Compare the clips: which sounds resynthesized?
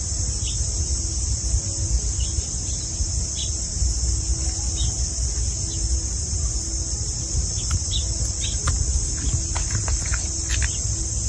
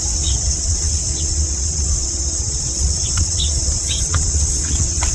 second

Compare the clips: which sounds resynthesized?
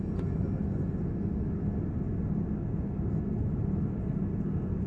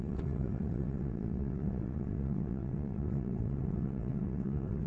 second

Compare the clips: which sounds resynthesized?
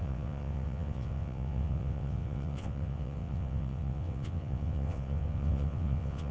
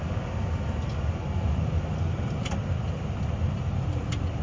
first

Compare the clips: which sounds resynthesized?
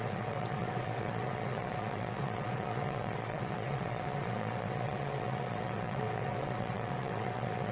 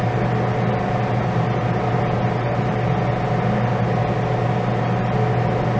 first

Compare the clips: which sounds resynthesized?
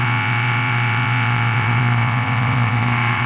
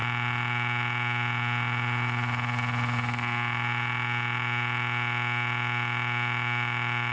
first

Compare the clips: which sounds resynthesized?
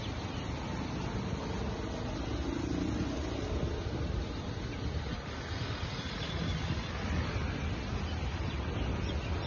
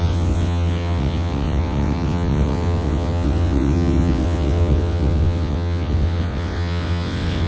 second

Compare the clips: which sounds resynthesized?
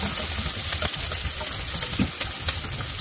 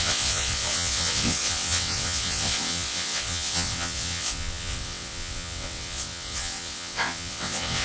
second